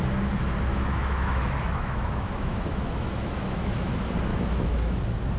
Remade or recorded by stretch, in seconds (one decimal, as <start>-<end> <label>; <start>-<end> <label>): 0.0-0.7 recorded; 0.7-3.9 remade; 3.9-4.3 recorded; 4.3-5.0 remade; 5.0-5.4 recorded